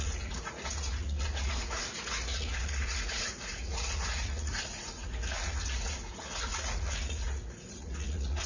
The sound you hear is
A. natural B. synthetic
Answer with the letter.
B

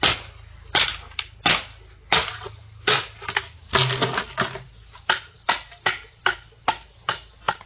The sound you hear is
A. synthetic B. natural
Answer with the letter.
B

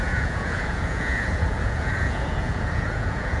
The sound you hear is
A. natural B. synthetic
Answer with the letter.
B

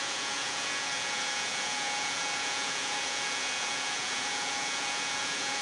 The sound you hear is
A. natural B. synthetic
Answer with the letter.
B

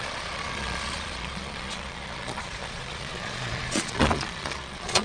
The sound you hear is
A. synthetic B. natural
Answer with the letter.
A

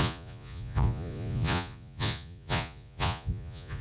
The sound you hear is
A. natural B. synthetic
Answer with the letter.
B